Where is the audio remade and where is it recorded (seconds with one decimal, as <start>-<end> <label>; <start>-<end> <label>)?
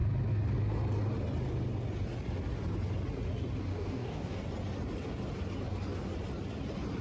0.0-3.7 recorded; 3.7-4.4 remade; 4.4-7.0 recorded